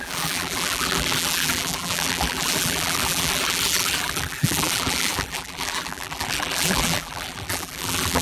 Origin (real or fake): fake